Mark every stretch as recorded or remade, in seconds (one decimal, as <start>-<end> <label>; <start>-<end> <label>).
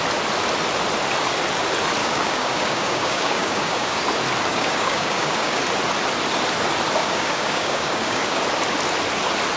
0.0-2.0 recorded; 2.0-4.0 remade; 4.0-4.5 recorded; 4.5-5.6 remade; 5.6-7.0 recorded; 7.0-8.4 remade; 8.4-9.6 recorded